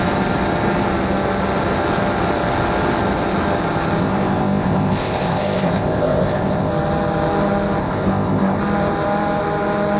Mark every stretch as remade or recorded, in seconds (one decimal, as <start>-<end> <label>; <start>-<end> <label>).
0.0-4.0 recorded; 4.0-6.7 remade; 6.7-7.8 recorded; 7.8-8.6 remade; 8.6-10.0 recorded